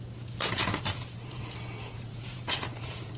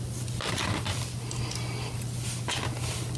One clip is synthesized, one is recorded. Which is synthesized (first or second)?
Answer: first